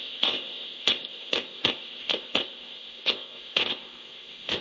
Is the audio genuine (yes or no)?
no